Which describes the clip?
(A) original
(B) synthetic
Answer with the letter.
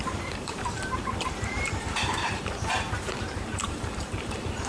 B